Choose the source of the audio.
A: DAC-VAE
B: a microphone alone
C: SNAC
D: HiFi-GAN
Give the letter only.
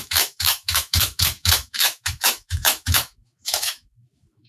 A